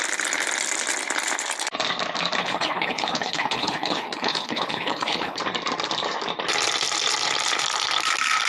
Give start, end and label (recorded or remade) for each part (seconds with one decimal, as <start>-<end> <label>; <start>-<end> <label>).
0.0-2.4 recorded; 2.4-5.4 remade; 5.4-8.5 recorded